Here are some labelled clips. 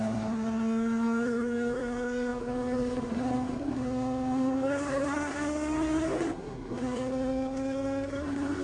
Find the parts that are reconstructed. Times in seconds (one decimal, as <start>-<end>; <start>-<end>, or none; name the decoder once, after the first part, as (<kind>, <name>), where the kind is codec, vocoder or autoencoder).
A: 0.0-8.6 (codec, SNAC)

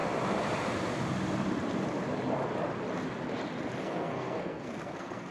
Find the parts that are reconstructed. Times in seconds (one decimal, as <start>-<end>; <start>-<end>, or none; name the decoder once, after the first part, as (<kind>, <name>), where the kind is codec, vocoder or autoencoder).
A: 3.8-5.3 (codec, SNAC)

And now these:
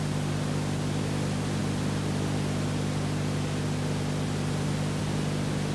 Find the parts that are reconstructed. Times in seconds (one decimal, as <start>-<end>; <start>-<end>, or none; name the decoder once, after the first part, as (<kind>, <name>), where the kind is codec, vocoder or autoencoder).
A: none